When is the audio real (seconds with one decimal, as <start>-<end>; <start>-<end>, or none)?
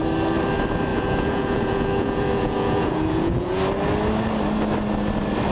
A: 0.0-0.9; 3.6-5.5